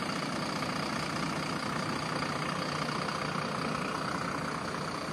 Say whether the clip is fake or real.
real